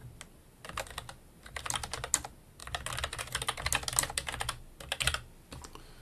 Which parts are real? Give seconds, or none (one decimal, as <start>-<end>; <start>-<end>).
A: 0.0-6.0